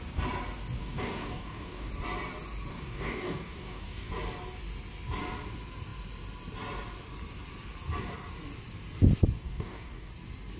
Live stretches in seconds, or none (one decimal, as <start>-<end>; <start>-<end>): 0.0-0.8; 1.9-2.7; 4.1-9.4; 10.1-10.6